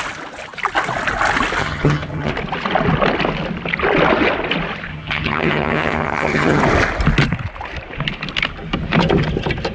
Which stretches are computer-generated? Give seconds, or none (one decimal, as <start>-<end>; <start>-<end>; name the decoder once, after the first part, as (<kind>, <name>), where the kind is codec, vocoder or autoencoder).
1.6-2.3 (vocoder, HiFi-GAN); 4.9-6.6